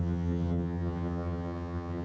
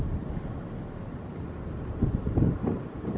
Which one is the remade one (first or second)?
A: first